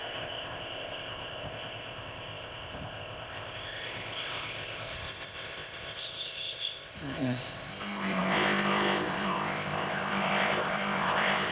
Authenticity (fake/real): fake